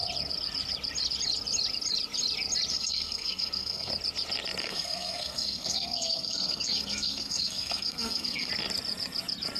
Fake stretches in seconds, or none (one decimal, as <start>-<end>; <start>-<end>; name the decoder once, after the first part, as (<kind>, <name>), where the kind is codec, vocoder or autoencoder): 2.7-3.9 (codec, SNAC); 4.6-8.5